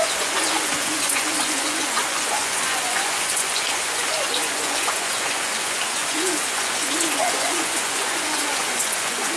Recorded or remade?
remade